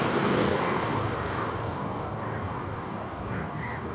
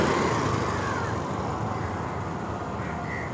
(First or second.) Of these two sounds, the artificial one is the first